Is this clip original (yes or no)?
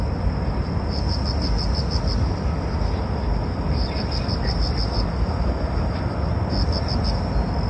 yes